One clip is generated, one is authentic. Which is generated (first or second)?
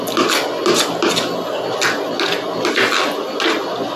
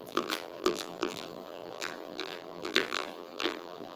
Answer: second